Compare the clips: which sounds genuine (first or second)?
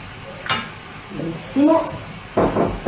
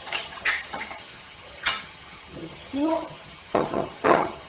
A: first